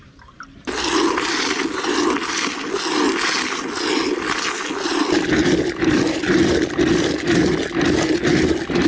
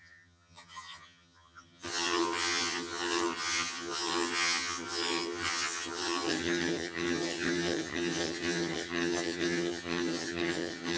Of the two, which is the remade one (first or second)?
second